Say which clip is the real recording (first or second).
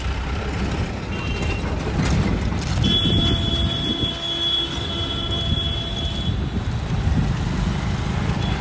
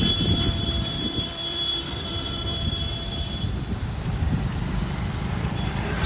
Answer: first